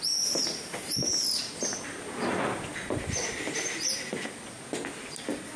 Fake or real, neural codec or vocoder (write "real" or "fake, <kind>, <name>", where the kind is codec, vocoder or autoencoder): real